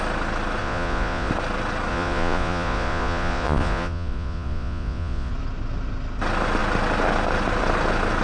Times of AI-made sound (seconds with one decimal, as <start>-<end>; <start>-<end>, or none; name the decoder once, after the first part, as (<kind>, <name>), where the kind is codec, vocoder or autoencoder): 0.6-1.3 (vocoder, Vocos); 1.9-5.3